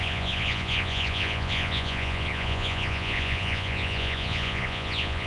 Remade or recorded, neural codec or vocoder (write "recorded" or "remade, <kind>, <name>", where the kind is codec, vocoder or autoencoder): remade, vocoder, Vocos